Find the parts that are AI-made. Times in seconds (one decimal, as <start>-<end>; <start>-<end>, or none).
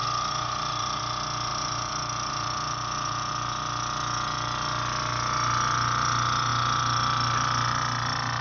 0.0-1.0; 1.5-3.3